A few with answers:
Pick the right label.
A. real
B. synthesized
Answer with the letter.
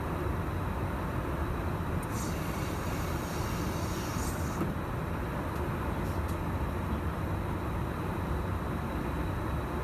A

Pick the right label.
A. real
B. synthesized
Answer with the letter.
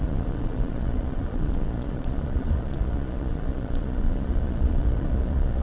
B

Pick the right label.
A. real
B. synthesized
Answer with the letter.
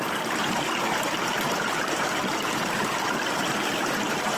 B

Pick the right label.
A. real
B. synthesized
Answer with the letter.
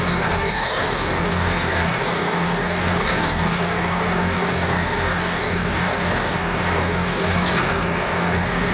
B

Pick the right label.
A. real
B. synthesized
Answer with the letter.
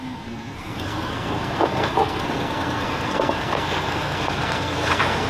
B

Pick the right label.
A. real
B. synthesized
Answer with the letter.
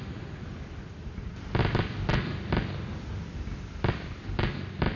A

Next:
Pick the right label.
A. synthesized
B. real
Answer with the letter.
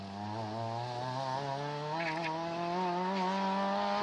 B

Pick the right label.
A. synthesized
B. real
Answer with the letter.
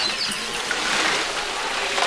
B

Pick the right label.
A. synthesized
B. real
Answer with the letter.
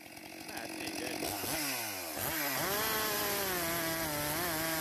B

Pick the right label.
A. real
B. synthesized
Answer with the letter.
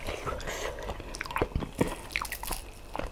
A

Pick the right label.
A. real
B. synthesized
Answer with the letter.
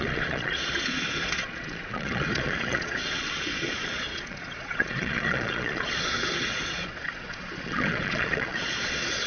B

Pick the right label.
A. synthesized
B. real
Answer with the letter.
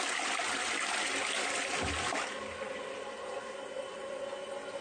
B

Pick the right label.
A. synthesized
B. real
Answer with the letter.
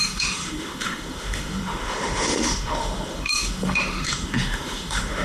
A